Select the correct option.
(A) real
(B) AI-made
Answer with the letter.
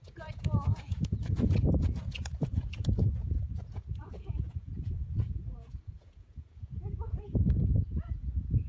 B